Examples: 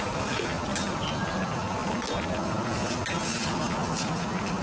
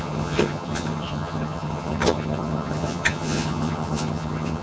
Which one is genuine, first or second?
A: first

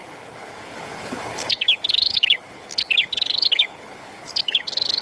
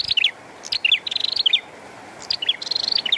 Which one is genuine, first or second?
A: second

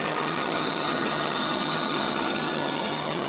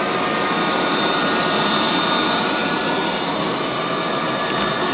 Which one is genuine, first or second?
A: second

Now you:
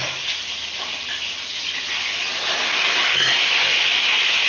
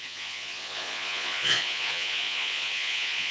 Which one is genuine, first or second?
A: first